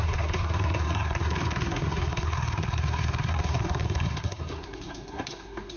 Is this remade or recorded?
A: remade